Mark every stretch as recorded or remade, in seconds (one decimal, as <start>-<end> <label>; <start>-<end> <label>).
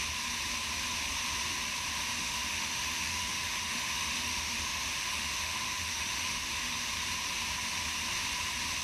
0.0-2.0 recorded; 2.0-6.9 remade; 6.9-8.8 recorded